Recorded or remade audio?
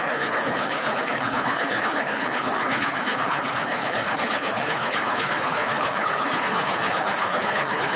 remade